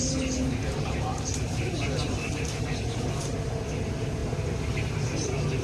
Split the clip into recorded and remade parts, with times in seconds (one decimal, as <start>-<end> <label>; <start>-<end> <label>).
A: 0.0-5.6 recorded